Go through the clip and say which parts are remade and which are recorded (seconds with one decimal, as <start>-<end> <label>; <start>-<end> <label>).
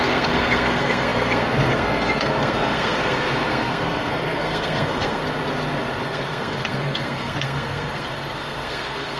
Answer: 0.0-5.2 remade; 5.2-6.0 recorded; 6.0-9.2 remade